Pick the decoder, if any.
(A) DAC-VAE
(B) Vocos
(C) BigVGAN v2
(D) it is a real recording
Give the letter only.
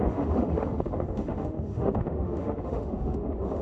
A